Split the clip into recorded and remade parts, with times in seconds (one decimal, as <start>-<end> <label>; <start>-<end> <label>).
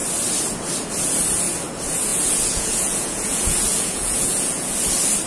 0.0-2.1 recorded; 2.1-4.7 remade; 4.7-5.3 recorded